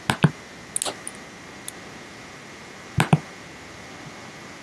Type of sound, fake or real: real